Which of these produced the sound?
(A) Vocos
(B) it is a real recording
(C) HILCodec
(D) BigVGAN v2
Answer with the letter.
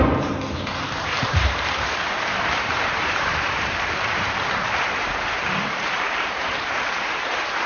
D